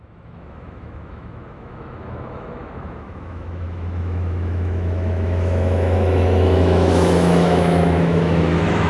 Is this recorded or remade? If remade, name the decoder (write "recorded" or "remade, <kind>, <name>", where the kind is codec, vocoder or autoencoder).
remade, autoencoder, DAC-VAE